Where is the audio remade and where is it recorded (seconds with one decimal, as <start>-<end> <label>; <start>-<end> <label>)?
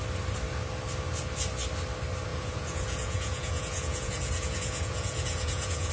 0.0-2.3 recorded; 2.3-5.9 remade